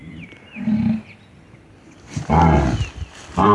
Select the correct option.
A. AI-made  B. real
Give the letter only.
B